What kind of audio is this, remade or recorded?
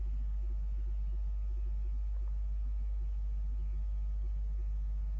recorded